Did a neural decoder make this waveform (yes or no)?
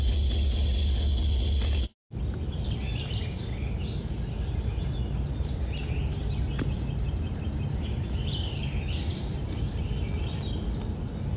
no